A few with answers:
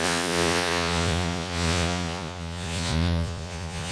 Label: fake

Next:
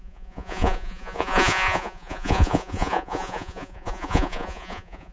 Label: fake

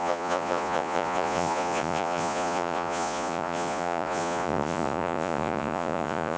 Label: fake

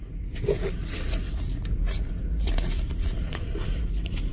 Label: fake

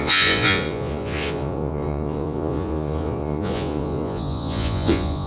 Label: fake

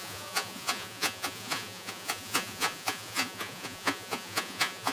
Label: fake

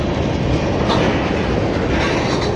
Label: real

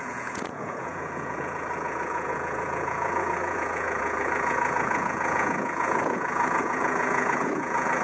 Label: fake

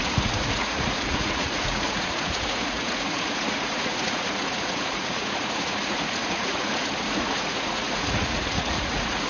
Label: fake